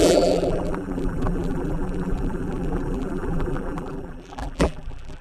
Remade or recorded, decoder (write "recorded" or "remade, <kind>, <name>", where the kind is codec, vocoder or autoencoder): remade, vocoder, BigVGAN v2